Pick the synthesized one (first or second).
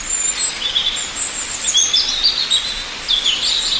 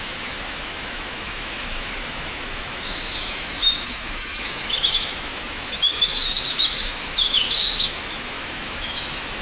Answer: second